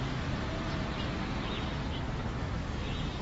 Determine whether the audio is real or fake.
real